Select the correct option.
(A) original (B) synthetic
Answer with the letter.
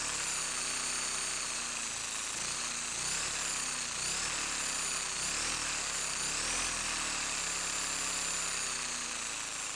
A